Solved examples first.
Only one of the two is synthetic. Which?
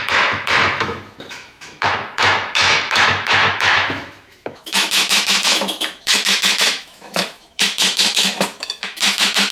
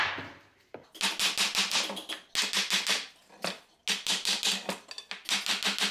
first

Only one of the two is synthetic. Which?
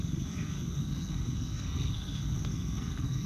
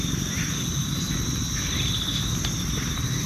first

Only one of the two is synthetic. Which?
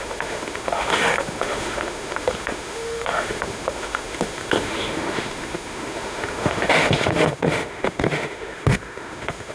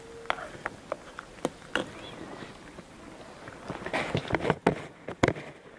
first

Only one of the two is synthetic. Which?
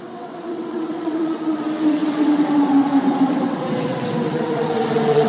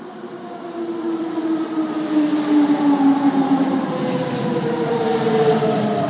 first